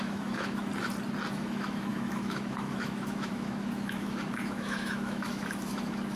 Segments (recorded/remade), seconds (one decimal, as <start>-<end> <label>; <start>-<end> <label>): 0.0-0.7 remade; 0.7-1.3 recorded; 1.3-6.2 remade

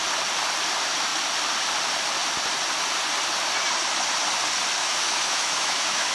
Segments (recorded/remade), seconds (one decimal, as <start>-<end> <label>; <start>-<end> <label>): 0.0-4.8 recorded; 4.8-6.1 remade

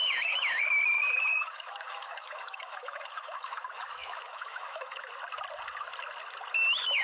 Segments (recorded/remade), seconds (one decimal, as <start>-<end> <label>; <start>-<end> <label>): 0.0-0.6 remade; 0.6-1.3 recorded; 1.3-5.1 remade; 5.1-7.0 recorded

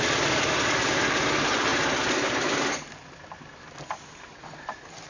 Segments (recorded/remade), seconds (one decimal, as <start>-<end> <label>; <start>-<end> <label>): 0.0-5.1 recorded

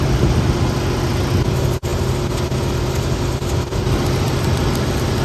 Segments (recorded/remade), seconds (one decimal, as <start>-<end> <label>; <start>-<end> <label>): 0.0-5.2 recorded